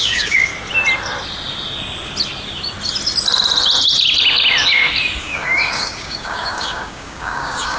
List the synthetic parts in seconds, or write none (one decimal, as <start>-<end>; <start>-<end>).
0.0-0.5; 5.2-7.8